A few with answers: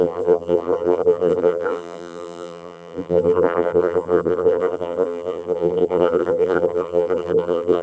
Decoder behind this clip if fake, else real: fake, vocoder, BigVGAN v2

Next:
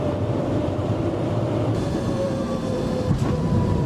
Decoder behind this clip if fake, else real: fake, vocoder, BigVGAN v2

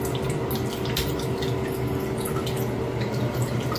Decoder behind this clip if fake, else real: real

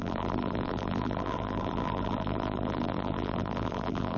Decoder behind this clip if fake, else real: fake, vocoder, BigVGAN v2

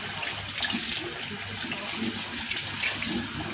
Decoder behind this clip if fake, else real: real